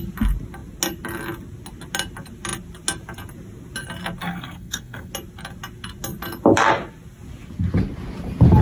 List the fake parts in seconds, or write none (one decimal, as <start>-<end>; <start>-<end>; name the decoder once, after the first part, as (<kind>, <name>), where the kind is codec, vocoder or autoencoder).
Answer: 4.2-5.1 (codec, SNAC)